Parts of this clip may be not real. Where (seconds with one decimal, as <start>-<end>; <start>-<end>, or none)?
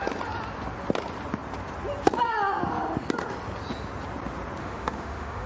4.6-5.5